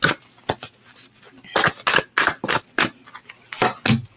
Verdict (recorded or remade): recorded